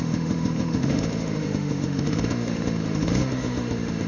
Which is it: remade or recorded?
remade